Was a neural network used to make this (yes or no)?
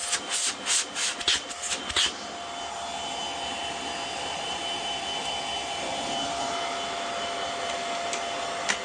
no